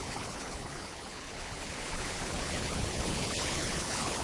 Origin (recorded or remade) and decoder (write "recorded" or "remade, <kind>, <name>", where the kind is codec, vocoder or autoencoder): remade, codec, HILCodec